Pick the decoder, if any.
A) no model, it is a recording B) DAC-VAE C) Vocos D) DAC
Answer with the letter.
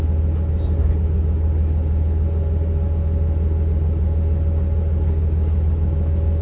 A